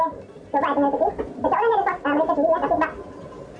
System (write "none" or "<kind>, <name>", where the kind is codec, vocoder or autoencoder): none